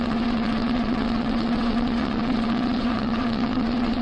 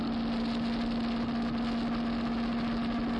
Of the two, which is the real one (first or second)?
second